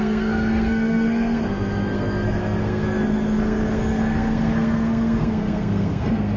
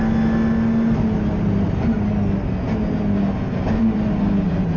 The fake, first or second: first